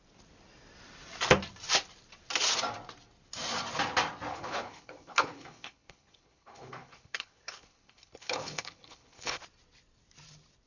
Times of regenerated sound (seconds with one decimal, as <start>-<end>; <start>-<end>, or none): 4.3-9.4